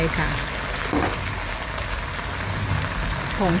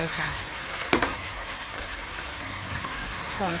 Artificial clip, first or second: second